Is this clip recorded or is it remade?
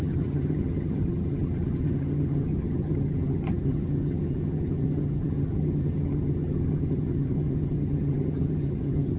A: remade